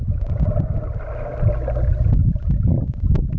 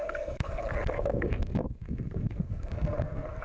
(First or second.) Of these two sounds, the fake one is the second